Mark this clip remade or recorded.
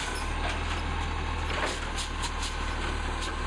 recorded